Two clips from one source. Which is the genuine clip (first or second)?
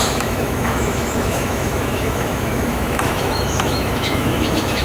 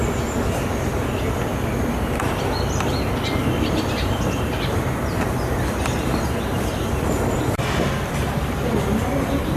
second